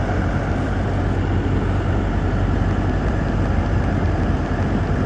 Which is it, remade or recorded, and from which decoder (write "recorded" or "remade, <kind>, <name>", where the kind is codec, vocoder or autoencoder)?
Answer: recorded